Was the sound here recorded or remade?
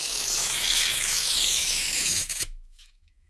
remade